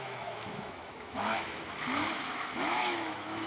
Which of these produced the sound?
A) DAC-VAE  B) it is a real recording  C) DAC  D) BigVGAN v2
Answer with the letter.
A